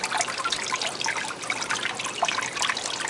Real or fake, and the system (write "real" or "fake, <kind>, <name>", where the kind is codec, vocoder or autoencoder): fake, vocoder, BigVGAN v2